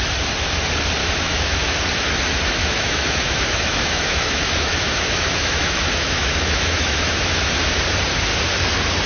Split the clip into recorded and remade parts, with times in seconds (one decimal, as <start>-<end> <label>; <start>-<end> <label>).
0.0-1.0 recorded; 1.0-1.8 remade; 1.8-2.6 recorded; 2.6-7.5 remade; 7.5-9.1 recorded